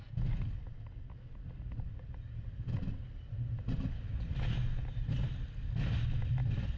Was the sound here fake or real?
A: real